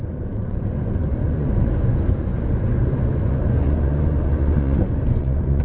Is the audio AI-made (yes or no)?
yes